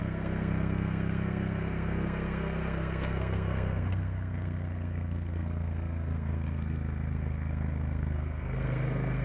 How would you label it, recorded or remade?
remade